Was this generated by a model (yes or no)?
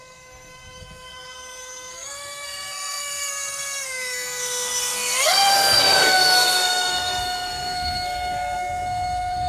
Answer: yes